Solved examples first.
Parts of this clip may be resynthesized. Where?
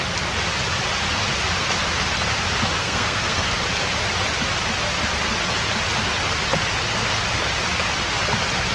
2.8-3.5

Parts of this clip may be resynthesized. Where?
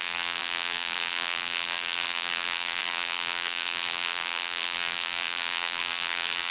0.0-6.5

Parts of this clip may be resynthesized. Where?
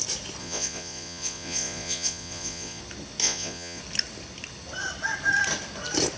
0.4-2.8; 3.2-3.8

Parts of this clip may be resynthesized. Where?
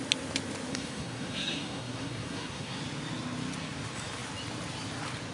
0.7-2.8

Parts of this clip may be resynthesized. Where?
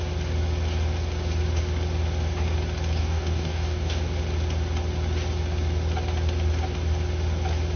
3.0-4.0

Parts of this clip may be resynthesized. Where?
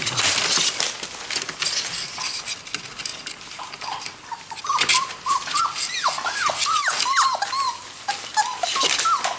none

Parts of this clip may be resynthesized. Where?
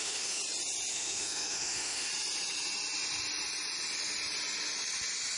0.0-0.4; 0.9-2.1